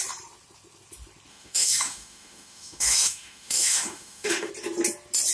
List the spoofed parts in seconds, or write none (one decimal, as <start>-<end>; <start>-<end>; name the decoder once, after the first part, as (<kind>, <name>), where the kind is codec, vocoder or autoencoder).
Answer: 1.3-4.5 (autoencoder, DAC-VAE)